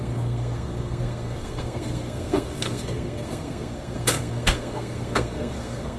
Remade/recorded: remade